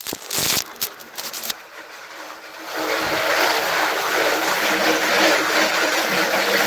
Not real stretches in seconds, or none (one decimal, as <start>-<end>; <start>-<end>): 0.0-0.4; 1.0-2.5; 5.5-6.7